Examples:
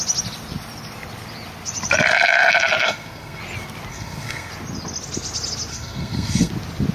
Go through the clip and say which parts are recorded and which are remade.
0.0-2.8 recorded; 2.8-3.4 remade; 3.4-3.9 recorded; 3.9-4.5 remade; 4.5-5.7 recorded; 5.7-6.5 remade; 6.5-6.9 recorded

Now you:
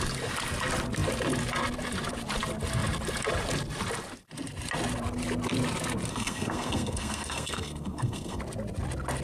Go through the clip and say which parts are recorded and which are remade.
0.0-6.1 recorded; 6.1-8.4 remade; 8.4-9.2 recorded

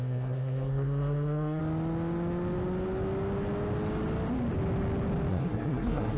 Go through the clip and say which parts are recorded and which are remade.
0.0-1.6 remade; 1.6-5.3 recorded; 5.3-6.2 remade

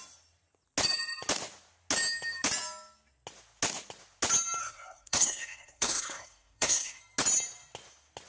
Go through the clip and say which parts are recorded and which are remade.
0.0-4.6 recorded; 4.6-7.0 remade; 7.0-8.3 recorded

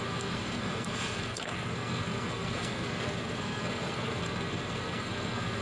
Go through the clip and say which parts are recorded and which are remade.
0.0-5.6 remade

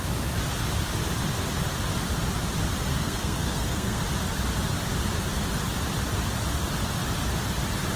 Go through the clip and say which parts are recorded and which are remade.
0.0-2.9 recorded; 2.9-4.0 remade; 4.0-8.0 recorded

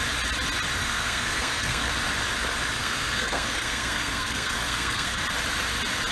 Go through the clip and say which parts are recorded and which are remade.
0.0-0.8 recorded; 0.8-1.9 remade; 1.9-2.8 recorded; 2.8-5.2 remade; 5.2-6.1 recorded

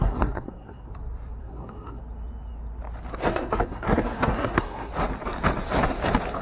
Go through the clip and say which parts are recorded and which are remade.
0.0-0.9 remade; 0.9-1.4 recorded; 1.4-2.0 remade; 2.0-3.3 recorded; 3.3-4.9 remade; 4.9-6.4 recorded